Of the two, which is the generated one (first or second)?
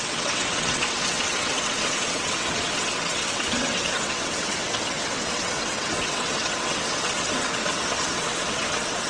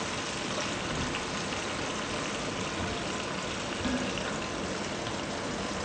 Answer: first